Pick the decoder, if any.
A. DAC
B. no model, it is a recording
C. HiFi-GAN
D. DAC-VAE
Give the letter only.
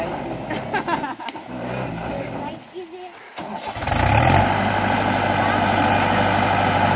B